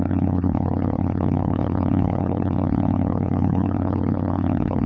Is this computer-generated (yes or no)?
yes